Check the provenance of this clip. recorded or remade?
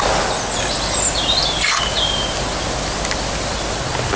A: recorded